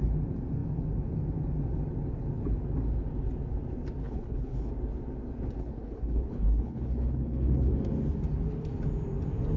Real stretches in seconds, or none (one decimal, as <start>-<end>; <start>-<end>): 0.0-4.0; 4.7-5.6; 7.7-9.6